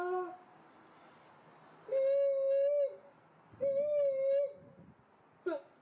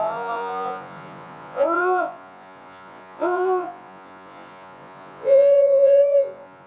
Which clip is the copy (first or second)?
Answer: second